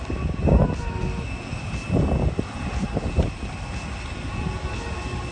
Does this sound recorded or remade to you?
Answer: recorded